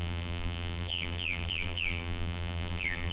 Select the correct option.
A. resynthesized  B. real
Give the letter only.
A